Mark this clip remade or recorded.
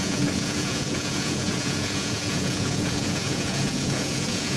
remade